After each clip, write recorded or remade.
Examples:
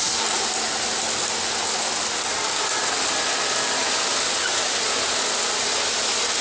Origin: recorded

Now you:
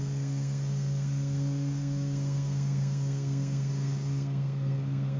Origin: remade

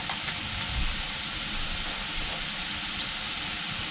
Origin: recorded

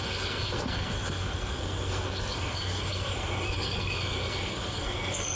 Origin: remade